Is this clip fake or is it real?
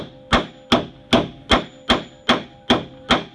real